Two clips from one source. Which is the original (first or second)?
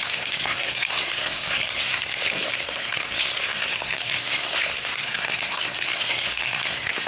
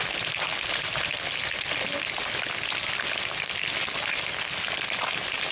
second